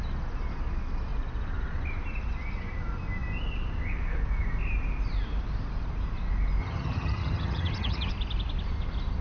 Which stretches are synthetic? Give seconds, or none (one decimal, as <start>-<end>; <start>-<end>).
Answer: 6.6-8.1